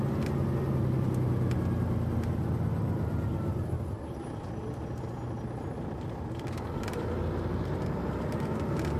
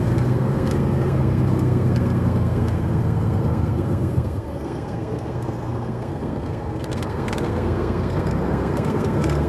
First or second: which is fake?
second